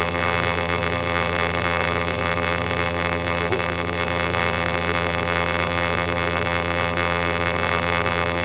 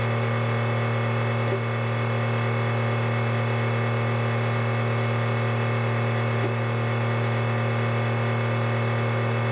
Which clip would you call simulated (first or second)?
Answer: first